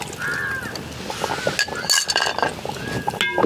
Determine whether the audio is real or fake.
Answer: real